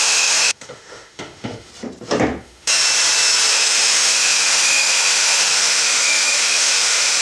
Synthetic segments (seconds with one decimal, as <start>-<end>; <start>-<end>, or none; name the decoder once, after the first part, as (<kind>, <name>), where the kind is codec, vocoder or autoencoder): 0.0-1.7 (autoencoder, DAC-VAE); 2.4-2.8; 3.5-7.2